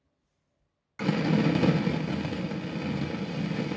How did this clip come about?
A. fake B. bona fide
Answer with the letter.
B